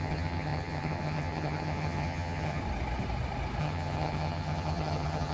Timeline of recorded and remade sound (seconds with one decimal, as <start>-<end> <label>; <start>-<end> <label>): 0.0-2.6 remade; 2.6-3.6 recorded; 3.6-5.3 remade